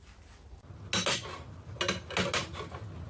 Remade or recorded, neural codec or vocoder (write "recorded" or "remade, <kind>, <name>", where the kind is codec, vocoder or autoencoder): recorded